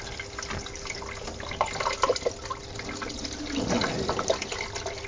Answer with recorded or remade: recorded